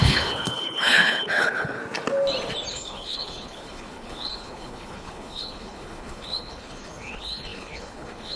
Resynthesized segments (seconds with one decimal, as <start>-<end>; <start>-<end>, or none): 0.0-1.8; 2.7-8.4